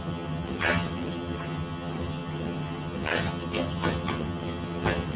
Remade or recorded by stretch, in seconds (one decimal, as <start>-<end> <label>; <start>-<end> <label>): 0.0-5.2 remade